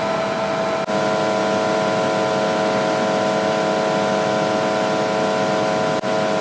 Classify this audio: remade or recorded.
recorded